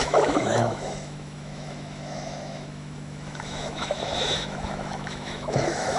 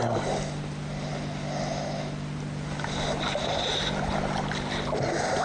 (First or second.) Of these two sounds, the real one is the second